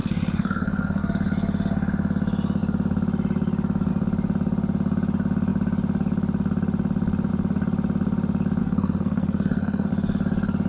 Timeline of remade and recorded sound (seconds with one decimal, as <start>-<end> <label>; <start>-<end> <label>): 0.0-1.0 remade; 1.0-8.6 recorded; 8.6-9.9 remade; 9.9-10.7 recorded

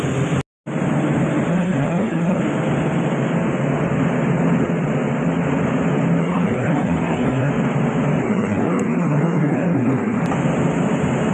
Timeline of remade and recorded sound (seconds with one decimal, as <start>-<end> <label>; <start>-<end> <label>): 0.0-1.5 recorded; 1.5-2.4 remade; 2.4-6.2 recorded; 6.2-7.5 remade; 7.5-8.2 recorded; 8.2-10.2 remade; 10.2-11.3 recorded